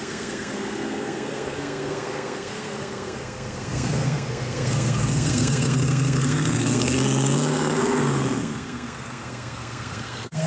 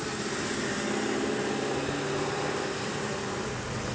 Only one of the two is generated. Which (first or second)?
first